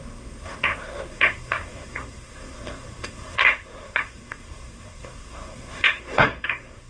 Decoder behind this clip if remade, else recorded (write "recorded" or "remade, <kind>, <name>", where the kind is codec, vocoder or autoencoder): remade, codec, SNAC